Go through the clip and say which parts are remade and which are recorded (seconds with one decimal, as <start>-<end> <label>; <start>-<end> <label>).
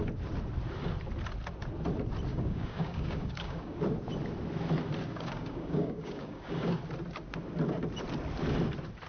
0.0-2.3 recorded; 2.3-3.8 remade; 3.8-5.1 recorded; 5.1-6.8 remade; 6.8-9.1 recorded